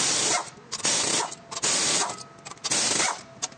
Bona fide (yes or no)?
yes